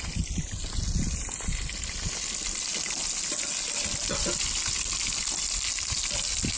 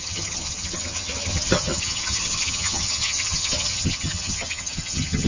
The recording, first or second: first